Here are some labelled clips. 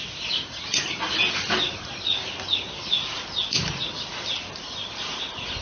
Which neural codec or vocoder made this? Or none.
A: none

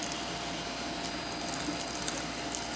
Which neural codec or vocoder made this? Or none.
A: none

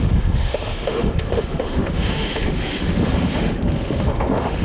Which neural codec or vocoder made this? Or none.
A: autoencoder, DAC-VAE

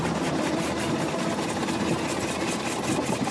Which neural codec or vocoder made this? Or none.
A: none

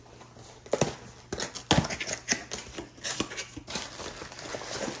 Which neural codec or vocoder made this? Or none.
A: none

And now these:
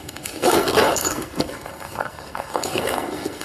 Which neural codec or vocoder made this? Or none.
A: codec, SNAC